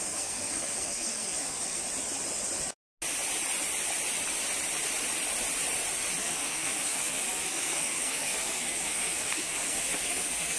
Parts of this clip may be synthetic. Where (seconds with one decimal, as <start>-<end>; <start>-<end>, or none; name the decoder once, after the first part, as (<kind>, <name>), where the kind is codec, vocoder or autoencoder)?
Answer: 0.0-1.8 (codec, SNAC); 6.2-10.6